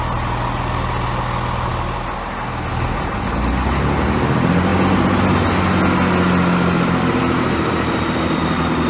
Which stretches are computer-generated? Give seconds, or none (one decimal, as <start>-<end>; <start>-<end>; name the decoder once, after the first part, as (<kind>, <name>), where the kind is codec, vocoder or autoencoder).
none